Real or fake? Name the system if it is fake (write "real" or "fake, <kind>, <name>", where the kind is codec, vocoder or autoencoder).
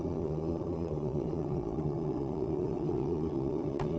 fake, vocoder, Vocos